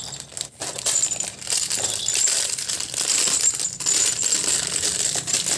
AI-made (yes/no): no